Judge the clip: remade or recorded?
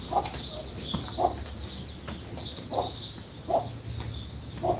recorded